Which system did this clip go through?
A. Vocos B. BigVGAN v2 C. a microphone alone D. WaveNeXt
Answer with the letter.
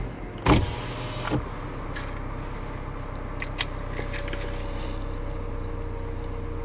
C